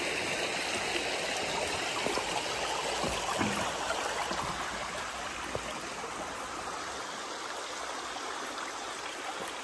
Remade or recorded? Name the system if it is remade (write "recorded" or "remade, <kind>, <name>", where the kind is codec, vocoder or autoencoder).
recorded